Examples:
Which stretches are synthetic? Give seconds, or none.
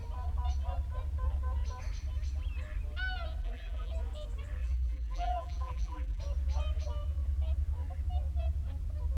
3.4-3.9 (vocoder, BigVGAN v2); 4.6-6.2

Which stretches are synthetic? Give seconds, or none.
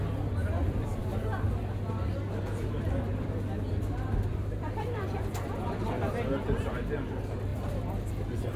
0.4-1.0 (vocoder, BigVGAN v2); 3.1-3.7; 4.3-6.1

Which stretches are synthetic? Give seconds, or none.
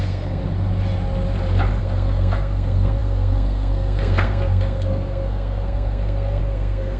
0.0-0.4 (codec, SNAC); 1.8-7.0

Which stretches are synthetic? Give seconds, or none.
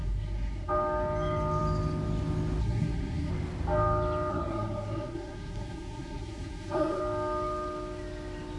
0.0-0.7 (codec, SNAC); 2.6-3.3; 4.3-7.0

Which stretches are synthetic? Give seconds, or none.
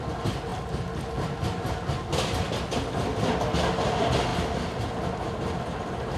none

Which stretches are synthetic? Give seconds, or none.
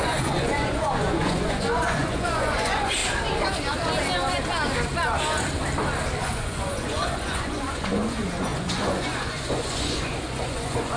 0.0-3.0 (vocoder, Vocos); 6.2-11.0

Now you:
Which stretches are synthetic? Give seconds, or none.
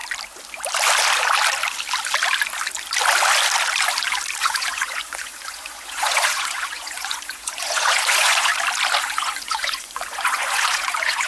4.4-8.5 (vocoder, Vocos); 9.0-11.3